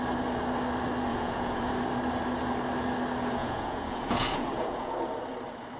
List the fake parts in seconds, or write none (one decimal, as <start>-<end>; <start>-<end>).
1.1-1.7; 3.4-4.9